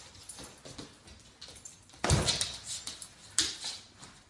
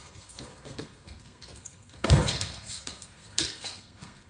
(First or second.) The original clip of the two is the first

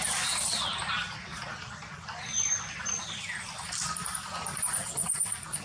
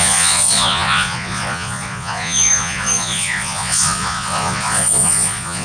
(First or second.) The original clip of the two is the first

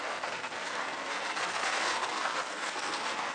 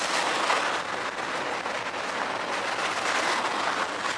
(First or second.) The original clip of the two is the second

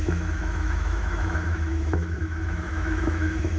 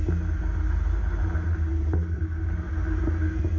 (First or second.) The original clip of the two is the second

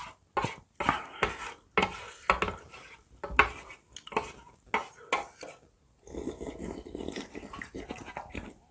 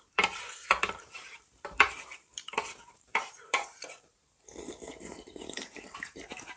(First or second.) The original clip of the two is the first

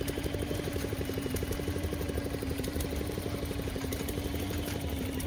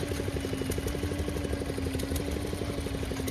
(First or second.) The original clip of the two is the second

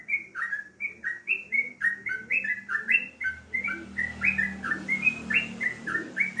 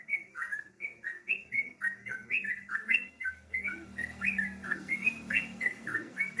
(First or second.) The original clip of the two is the first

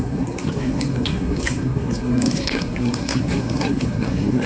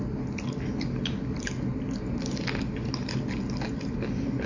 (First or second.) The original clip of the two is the second